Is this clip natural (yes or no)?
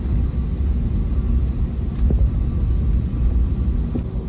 yes